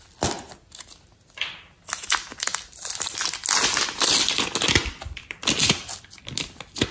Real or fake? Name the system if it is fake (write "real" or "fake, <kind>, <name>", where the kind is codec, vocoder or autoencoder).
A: real